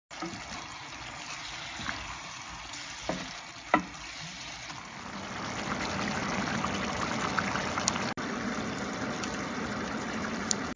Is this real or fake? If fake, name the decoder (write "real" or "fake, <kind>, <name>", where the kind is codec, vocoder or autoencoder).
real